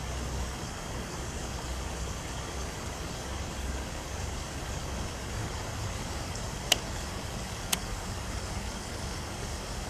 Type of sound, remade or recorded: remade